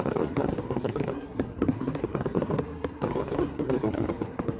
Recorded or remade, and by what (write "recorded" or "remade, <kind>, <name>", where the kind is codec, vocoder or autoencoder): remade, codec, SNAC